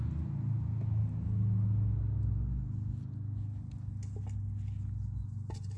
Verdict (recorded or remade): recorded